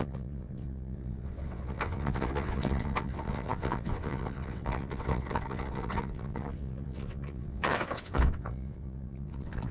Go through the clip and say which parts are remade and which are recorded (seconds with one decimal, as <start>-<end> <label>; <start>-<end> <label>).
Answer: 0.0-9.7 remade